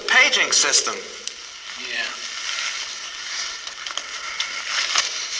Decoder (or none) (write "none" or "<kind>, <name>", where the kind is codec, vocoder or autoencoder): none